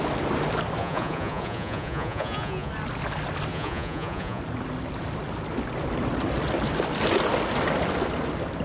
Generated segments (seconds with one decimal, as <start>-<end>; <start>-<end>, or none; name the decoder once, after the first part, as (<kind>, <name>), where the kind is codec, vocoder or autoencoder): 0.8-2.7 (vocoder, Vocos); 3.5-4.4